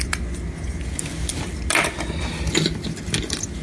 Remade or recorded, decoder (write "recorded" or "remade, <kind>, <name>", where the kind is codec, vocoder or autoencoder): recorded